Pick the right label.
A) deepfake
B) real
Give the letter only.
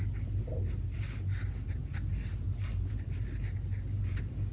B